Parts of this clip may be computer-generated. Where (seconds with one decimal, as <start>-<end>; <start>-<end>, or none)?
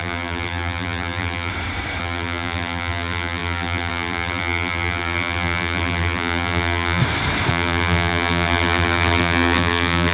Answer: 0.0-1.5; 2.0-7.0; 7.5-10.1